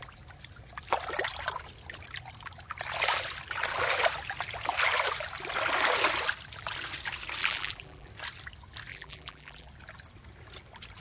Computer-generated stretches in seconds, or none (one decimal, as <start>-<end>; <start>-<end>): 7.4-8.1; 8.9-9.7